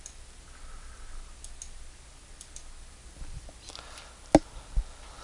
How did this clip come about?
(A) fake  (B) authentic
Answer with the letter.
B